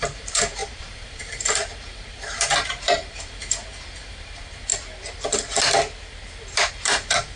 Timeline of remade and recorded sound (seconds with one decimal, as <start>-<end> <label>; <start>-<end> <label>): 0.0-4.7 remade; 4.7-6.7 recorded; 6.7-7.4 remade